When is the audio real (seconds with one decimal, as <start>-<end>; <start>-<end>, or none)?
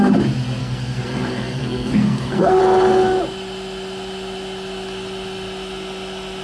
0.0-0.6; 2.6-6.4